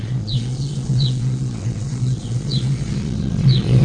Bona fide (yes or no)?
no